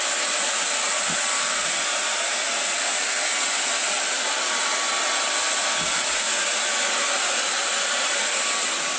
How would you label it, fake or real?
real